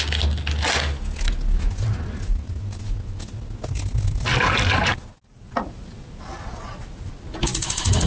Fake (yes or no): no